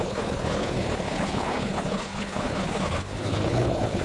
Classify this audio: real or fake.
fake